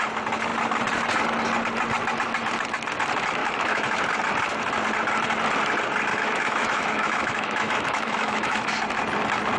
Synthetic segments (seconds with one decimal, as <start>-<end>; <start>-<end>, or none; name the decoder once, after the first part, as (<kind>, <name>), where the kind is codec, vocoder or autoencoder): 3.4-4.0 (autoencoder, DAC-VAE); 6.1-8.8